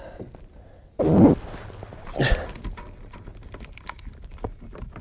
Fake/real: real